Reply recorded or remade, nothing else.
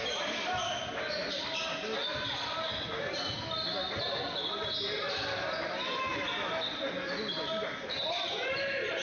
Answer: recorded